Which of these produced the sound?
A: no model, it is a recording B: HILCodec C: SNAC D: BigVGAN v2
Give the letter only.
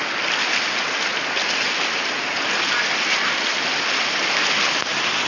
A